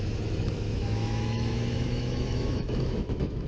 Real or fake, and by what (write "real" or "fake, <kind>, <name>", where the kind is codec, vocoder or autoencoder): fake, autoencoder, DAC-VAE